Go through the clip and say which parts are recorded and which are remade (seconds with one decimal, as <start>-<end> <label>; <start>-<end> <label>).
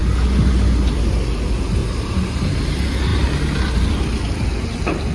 0.0-1.8 recorded; 1.8-2.7 remade; 2.7-5.1 recorded